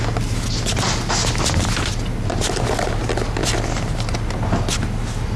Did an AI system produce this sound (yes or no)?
no